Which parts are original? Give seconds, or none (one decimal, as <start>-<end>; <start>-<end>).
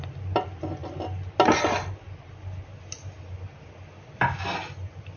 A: 0.0-5.2